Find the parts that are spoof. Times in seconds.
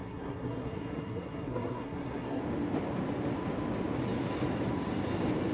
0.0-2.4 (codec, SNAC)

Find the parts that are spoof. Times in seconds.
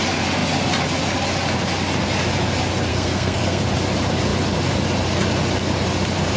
2.9-3.6 (codec, SNAC)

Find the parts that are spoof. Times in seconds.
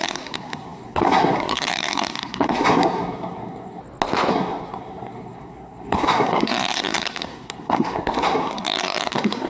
0.0-3.8 (codec, SNAC); 4.3-9.5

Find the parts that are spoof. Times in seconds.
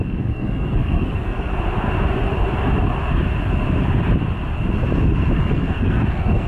0.0-1.5 (codec, SNAC); 5.4-6.5